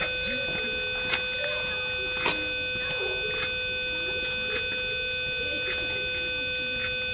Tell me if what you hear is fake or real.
real